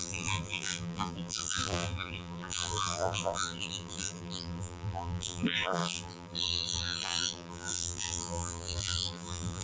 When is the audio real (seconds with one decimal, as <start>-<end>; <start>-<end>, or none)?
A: none

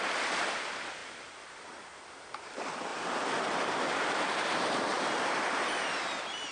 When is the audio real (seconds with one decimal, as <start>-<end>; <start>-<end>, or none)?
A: 0.0-1.0; 1.6-2.9; 3.9-4.9; 5.5-6.5

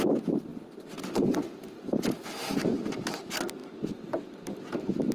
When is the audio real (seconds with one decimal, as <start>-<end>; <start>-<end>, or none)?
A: 0.0-0.5; 2.1-5.1